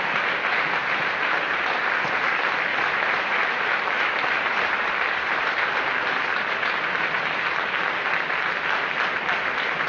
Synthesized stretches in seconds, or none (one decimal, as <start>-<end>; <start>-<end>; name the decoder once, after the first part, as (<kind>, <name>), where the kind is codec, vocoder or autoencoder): 0.8-2.3 (vocoder, BigVGAN v2); 2.7-7.7